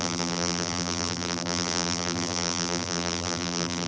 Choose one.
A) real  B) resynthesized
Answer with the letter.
B